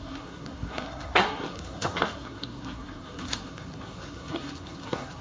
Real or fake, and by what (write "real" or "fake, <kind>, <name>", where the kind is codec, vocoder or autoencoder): fake, codec, SNAC